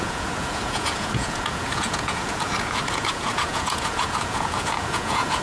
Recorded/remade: remade